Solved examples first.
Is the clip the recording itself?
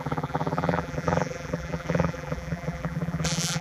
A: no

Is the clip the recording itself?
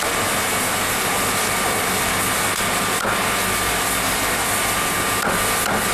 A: yes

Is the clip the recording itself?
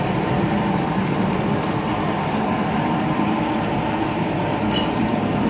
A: no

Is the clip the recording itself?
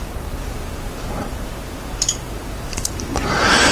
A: no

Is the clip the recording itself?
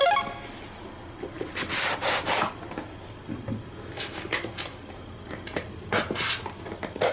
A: yes